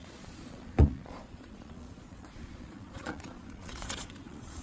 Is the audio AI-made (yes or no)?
yes